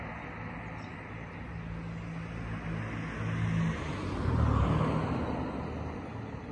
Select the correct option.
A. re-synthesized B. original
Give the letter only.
B